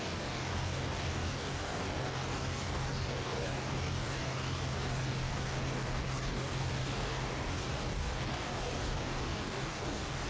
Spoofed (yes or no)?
yes